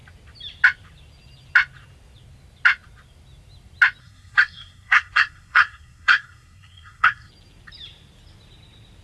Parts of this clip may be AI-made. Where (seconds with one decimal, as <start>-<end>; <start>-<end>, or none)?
4.0-7.3